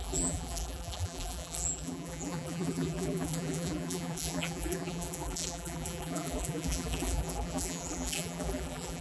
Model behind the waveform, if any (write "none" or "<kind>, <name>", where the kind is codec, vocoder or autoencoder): vocoder, BigVGAN v2